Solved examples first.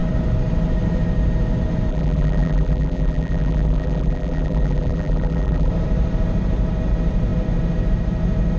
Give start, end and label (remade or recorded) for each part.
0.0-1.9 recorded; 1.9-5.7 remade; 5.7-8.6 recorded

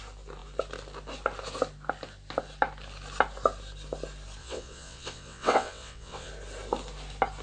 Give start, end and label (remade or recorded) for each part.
0.0-4.4 recorded; 4.4-6.3 remade; 6.3-7.4 recorded

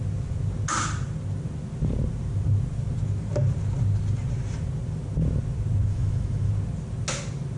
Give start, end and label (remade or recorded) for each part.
0.0-5.9 recorded; 5.9-6.5 remade; 6.5-7.6 recorded

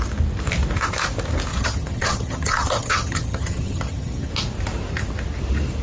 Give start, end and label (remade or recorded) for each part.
0.0-1.5 recorded; 1.5-4.3 remade; 4.3-5.8 recorded

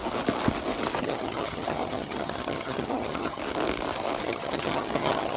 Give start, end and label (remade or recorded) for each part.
0.0-1.0 recorded; 1.0-3.4 remade; 3.4-4.2 recorded; 4.2-5.4 remade

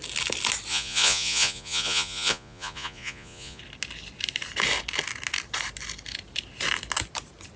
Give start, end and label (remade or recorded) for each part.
0.0-0.7 recorded; 0.7-3.6 remade; 3.6-7.6 recorded

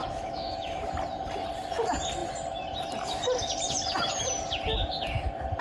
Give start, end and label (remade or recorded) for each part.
0.0-0.9 remade; 0.9-5.6 recorded